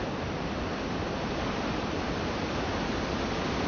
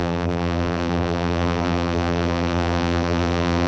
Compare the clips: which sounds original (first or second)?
first